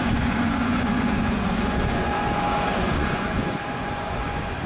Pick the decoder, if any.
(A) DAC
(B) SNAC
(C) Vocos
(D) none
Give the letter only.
C